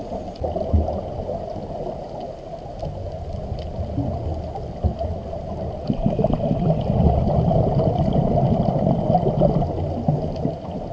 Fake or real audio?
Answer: real